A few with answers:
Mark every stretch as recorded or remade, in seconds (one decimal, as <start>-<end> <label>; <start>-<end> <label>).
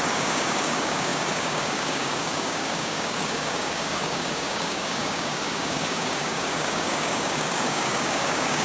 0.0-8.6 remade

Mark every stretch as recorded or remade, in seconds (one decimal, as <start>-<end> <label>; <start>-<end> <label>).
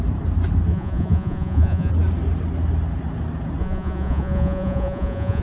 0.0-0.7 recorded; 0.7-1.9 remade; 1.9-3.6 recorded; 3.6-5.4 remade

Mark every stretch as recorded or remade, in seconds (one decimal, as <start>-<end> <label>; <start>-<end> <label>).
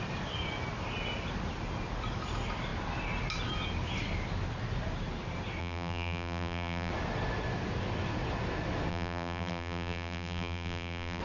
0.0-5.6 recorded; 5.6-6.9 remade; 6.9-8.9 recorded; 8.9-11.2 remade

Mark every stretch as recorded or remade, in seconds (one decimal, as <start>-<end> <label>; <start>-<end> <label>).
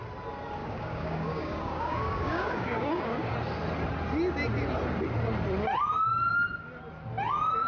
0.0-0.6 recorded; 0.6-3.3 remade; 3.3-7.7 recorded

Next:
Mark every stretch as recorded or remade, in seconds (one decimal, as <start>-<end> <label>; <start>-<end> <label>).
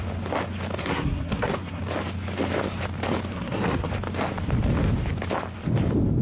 0.0-0.8 recorded; 0.8-1.8 remade; 1.8-3.3 recorded; 3.3-3.9 remade; 3.9-6.2 recorded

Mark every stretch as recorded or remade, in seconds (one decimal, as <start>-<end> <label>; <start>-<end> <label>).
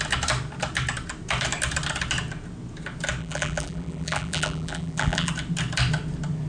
0.0-3.2 recorded; 3.2-5.3 remade; 5.3-6.5 recorded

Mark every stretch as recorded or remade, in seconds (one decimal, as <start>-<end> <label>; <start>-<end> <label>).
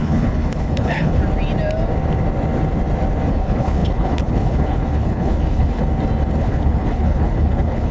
0.0-1.2 remade; 1.2-3.3 recorded; 3.3-5.8 remade; 5.8-6.4 recorded; 6.4-7.9 remade